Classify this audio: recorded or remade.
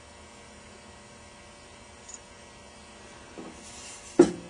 recorded